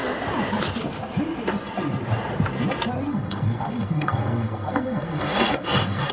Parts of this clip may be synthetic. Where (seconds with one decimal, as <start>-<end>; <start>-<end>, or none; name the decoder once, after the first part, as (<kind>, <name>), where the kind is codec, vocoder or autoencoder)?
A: 3.1-6.1 (codec, SNAC)